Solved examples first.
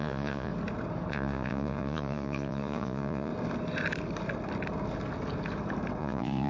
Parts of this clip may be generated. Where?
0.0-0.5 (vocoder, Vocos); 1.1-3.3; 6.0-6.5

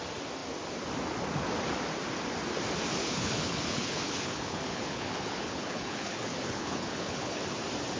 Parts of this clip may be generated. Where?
3.0-7.4 (codec, HILCodec)